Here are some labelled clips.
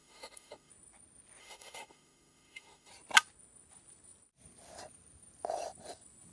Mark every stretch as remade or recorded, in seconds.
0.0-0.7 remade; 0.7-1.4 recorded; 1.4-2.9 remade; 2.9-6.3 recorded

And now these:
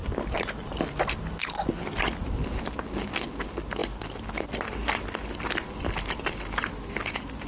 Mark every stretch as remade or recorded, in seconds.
0.0-7.5 recorded

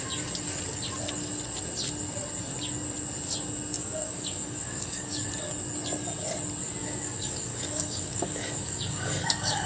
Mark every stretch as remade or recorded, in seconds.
0.0-3.8 recorded; 3.8-5.3 remade; 5.3-6.8 recorded; 6.8-9.7 remade

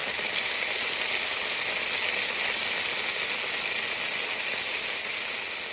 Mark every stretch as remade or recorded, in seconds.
0.0-5.7 recorded

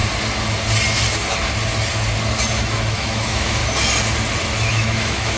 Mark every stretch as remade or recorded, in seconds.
0.0-2.9 recorded; 2.9-3.6 remade; 3.6-4.7 recorded; 4.7-5.4 remade